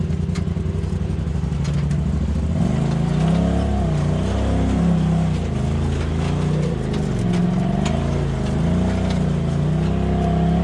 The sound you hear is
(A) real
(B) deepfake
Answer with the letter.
A